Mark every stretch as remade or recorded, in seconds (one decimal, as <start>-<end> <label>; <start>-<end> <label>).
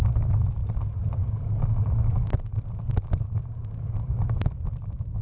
0.0-5.2 recorded